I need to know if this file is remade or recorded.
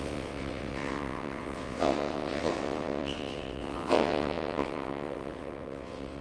remade